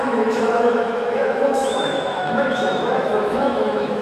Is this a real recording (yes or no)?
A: no